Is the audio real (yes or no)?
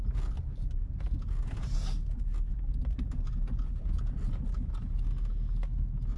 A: yes